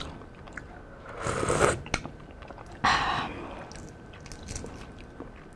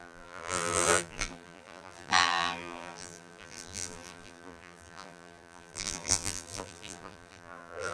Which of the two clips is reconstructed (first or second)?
second